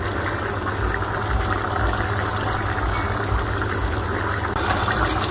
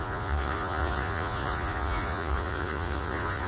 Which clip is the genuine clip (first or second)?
first